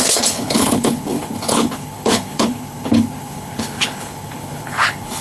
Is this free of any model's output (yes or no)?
no